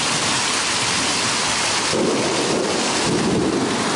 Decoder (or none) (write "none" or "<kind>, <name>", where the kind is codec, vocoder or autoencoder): none